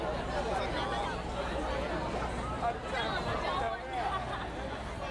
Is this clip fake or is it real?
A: real